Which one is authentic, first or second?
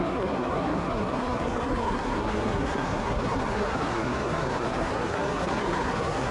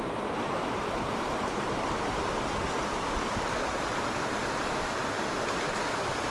second